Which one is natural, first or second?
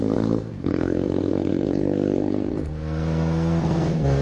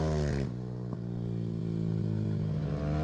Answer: second